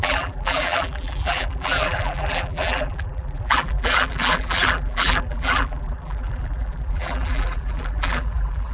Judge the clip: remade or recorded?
remade